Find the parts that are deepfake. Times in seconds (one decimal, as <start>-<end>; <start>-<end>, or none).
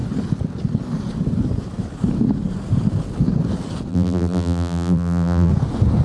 3.9-5.5